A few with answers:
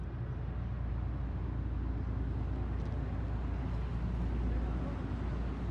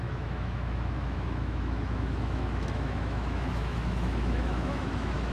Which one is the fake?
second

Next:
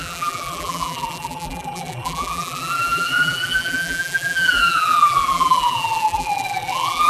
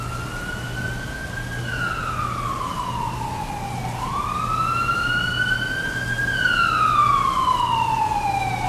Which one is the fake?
first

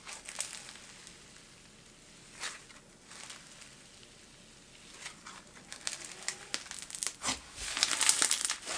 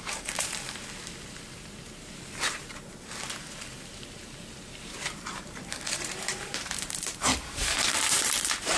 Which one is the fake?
second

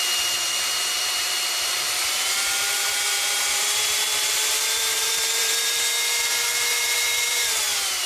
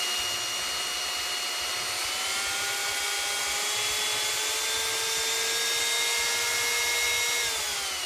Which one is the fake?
first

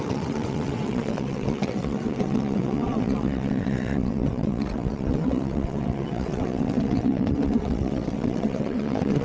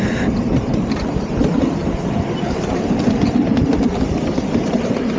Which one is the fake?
first